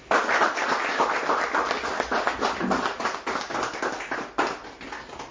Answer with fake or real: real